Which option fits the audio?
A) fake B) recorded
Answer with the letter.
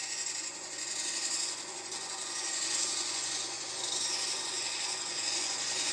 A